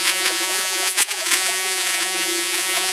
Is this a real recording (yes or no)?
no